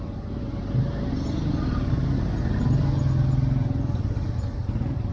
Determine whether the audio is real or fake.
real